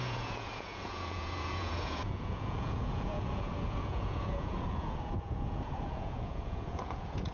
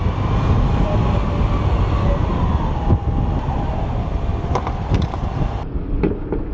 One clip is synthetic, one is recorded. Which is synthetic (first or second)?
first